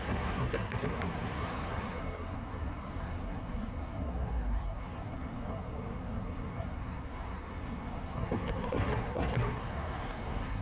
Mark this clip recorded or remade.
remade